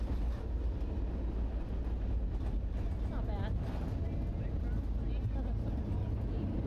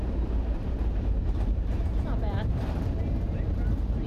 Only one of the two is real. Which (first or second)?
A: first